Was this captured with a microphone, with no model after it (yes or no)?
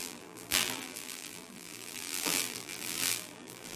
no